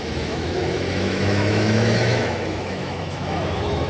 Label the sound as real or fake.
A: fake